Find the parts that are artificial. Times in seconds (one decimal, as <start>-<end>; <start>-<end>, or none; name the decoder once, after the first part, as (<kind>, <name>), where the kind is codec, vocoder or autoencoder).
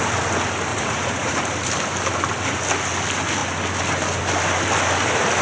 0.7-1.4 (vocoder, Vocos)